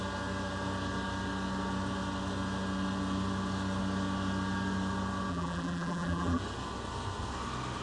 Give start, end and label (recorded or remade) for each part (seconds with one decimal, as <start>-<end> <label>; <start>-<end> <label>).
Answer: 0.0-5.3 recorded; 5.3-6.4 remade; 6.4-7.8 recorded